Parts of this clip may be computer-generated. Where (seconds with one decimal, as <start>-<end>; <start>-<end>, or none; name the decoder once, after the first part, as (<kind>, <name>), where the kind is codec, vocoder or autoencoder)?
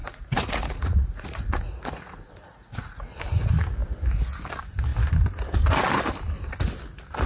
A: 0.0-3.1 (vocoder, Vocos)